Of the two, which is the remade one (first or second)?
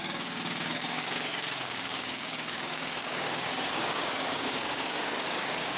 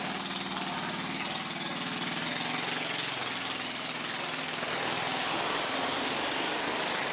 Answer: first